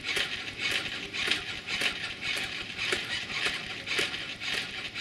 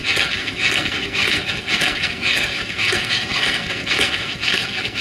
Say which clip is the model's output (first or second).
second